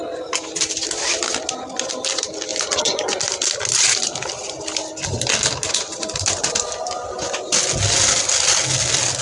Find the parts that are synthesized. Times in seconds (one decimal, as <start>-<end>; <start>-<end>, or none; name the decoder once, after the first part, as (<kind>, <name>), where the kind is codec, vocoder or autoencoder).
none